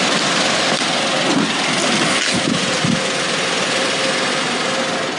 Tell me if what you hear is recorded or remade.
recorded